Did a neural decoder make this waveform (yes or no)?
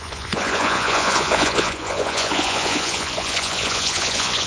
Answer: yes